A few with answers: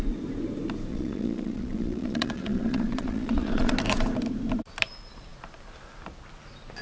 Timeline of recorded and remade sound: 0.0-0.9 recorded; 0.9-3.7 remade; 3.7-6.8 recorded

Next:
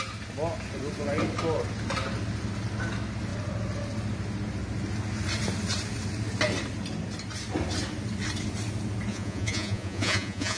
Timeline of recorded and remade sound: 0.0-9.1 recorded; 9.1-10.6 remade

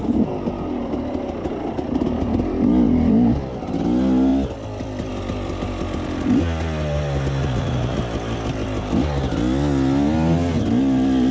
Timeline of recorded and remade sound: 0.0-7.4 recorded; 7.4-8.0 remade; 8.0-11.3 recorded